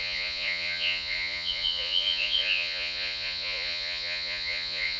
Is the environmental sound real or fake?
fake